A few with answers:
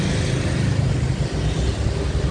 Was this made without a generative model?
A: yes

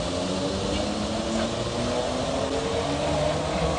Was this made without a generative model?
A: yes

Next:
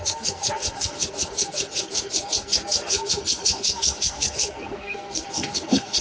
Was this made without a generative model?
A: no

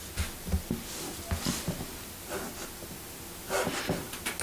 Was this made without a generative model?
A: yes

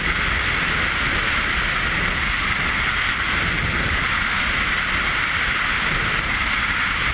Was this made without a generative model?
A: yes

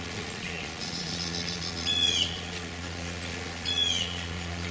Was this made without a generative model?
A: no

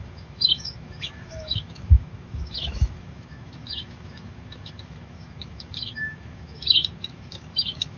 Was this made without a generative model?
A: no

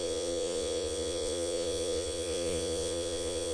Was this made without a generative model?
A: no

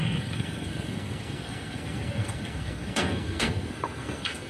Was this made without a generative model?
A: no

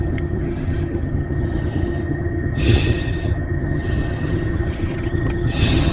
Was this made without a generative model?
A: no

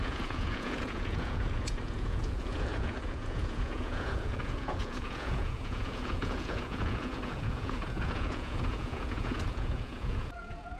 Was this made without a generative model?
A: no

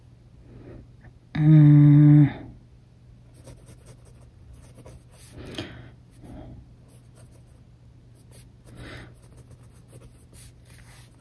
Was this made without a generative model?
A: yes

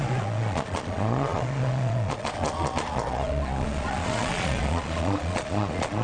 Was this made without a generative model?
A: no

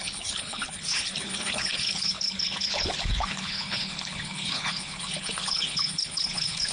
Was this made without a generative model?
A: no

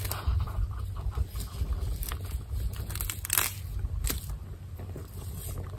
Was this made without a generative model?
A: yes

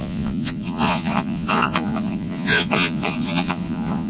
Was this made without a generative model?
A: no